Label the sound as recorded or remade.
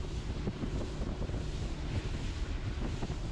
recorded